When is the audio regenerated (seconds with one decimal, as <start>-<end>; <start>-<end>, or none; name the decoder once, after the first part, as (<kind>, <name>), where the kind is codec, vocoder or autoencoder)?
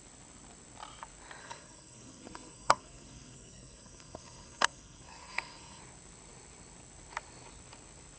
1.4-5.8 (codec, SNAC)